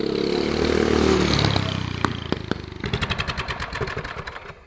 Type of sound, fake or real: real